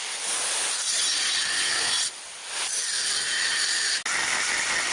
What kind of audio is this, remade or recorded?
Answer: recorded